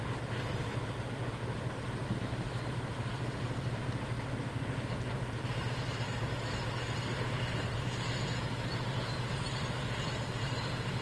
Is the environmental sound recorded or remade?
recorded